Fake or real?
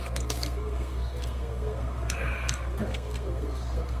fake